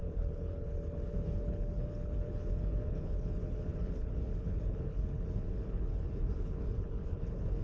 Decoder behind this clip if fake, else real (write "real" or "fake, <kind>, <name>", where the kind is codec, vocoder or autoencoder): fake, codec, HILCodec